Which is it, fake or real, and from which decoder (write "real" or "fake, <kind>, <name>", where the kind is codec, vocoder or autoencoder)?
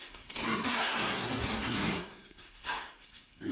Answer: fake, codec, SNAC